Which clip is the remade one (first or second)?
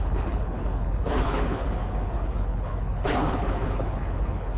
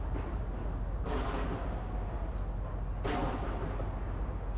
first